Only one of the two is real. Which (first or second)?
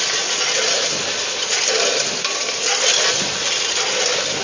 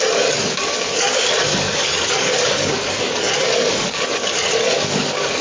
first